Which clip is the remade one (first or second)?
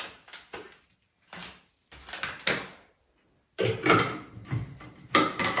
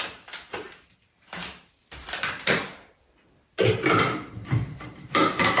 second